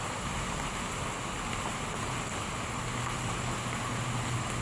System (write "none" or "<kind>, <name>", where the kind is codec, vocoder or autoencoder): none